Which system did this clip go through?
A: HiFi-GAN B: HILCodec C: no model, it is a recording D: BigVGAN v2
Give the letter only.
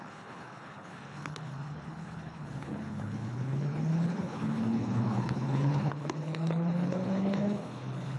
B